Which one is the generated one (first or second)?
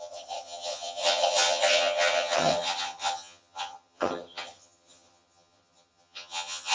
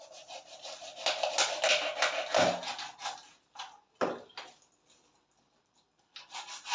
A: first